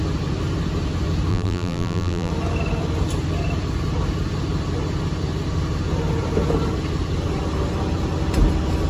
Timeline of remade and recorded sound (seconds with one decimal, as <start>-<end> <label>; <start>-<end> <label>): 0.0-1.3 recorded; 1.3-2.3 remade; 2.3-8.9 recorded